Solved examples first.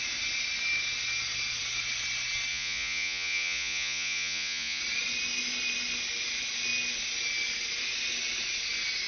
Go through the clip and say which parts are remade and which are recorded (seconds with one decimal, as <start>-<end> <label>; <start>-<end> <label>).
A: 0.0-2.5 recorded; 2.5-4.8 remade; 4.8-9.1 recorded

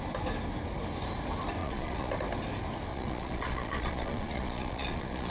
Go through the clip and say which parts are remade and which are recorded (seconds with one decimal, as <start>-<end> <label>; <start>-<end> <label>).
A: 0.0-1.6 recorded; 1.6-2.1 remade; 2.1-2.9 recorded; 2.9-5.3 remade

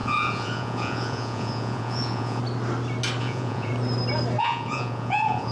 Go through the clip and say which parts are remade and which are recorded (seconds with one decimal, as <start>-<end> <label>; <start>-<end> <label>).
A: 0.0-2.4 remade; 2.4-3.2 recorded; 3.2-3.7 remade; 3.7-4.4 recorded; 4.4-5.5 remade

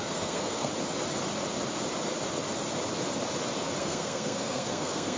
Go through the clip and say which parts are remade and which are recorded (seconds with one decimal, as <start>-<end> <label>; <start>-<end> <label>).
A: 0.0-0.7 remade; 0.7-3.8 recorded; 3.8-5.2 remade